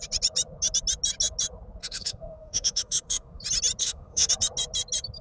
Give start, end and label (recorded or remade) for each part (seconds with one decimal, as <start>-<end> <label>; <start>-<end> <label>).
0.0-1.8 recorded; 1.8-3.4 remade; 3.4-3.8 recorded; 3.8-4.3 remade; 4.3-5.2 recorded